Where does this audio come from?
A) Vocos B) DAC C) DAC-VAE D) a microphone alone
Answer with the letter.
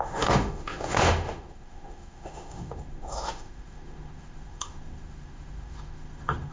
C